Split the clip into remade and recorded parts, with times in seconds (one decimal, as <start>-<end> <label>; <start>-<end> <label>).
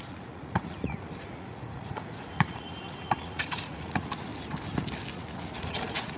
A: 0.0-4.3 remade; 4.3-5.1 recorded; 5.1-6.2 remade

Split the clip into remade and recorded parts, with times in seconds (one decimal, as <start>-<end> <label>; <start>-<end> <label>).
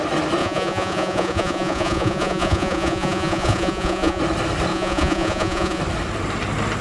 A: 0.0-0.4 recorded; 0.4-4.2 remade; 4.2-4.7 recorded; 4.7-5.8 remade; 5.8-6.8 recorded